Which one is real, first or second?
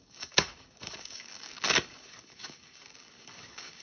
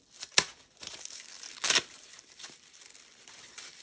second